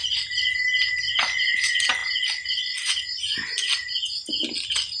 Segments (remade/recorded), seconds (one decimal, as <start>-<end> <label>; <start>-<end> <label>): 0.0-5.0 recorded